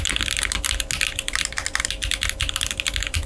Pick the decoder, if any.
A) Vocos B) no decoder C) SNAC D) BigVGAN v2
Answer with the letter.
B